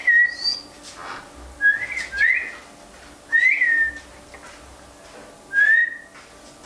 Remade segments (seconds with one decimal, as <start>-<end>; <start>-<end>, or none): none